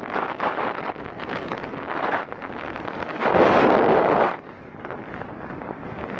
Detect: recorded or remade remade